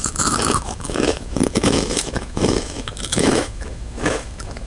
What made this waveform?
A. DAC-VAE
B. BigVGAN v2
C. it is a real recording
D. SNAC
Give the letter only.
A